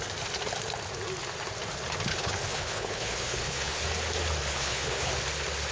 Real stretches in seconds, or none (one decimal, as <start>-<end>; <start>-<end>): 0.0-2.1; 3.8-4.5; 5.1-5.7